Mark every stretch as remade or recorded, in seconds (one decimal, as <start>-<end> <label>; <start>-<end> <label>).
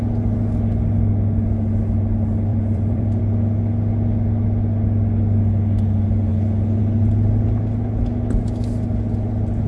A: 0.0-2.5 recorded; 2.5-3.2 remade; 3.2-9.7 recorded